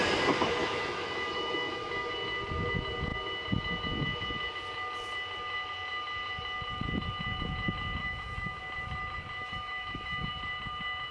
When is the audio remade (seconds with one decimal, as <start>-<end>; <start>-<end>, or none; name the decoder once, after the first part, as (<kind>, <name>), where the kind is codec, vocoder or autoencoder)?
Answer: 0.6-2.1 (autoencoder, DAC-VAE); 8.0-8.6; 9.4-10.3